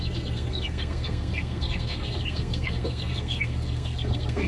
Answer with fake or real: fake